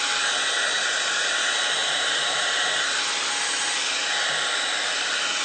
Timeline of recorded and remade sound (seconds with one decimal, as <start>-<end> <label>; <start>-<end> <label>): 0.0-5.4 recorded